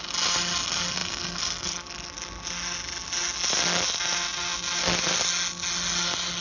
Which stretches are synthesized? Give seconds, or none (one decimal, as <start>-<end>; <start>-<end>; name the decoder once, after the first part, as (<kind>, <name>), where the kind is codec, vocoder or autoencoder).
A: none